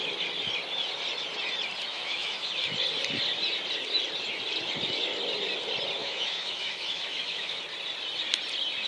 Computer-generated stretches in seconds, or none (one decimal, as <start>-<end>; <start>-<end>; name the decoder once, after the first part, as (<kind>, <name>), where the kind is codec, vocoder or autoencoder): 1.9-2.5 (autoencoder, DAC-VAE); 6.0-7.6